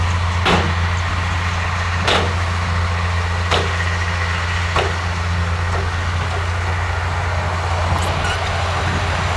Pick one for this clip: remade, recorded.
recorded